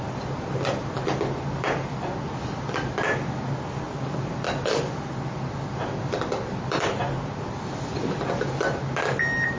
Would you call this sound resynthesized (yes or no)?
no